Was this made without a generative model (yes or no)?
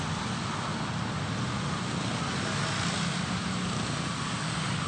yes